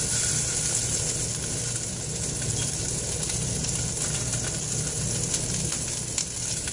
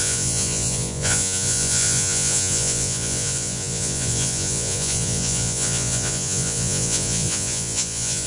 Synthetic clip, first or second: second